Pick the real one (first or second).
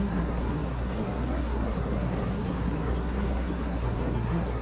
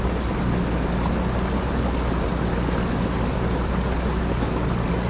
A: second